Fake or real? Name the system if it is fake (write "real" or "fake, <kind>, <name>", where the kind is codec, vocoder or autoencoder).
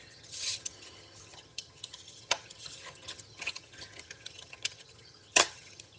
fake, vocoder, HiFi-GAN